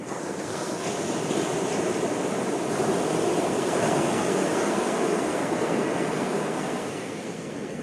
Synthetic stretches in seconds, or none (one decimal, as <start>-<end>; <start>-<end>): 0.0-0.9; 3.4-7.8